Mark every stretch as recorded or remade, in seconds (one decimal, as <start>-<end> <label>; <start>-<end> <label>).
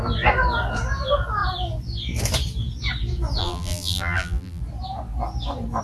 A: 0.0-3.4 recorded; 3.4-4.6 remade; 4.6-5.8 recorded